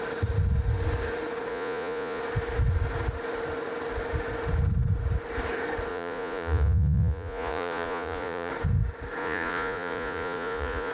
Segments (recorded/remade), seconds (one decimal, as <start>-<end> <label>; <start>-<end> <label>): 0.0-1.5 recorded; 1.5-2.2 remade; 2.2-5.9 recorded; 5.9-8.5 remade; 8.5-9.2 recorded; 9.2-10.9 remade